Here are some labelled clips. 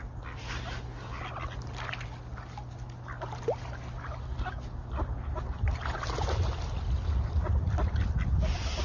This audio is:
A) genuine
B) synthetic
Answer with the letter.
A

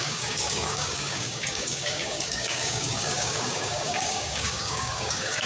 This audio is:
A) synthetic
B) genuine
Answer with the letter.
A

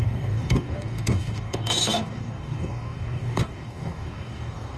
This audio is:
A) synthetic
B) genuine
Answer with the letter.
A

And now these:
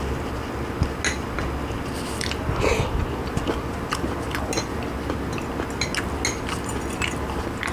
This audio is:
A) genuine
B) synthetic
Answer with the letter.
A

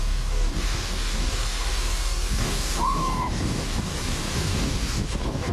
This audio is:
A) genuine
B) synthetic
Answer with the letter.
B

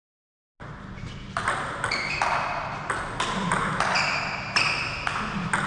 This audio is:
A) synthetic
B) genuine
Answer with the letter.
B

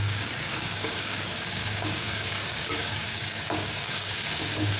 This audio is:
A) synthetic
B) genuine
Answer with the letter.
A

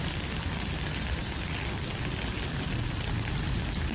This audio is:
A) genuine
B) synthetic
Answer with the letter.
A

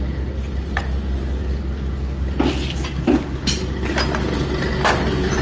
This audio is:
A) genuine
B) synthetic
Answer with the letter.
A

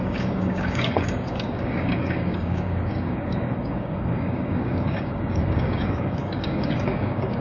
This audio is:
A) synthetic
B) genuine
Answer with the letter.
A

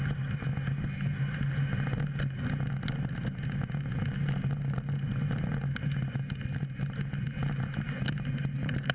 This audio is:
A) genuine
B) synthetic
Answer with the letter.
A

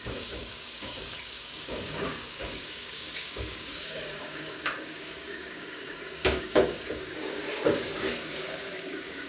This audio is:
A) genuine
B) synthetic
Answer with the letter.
B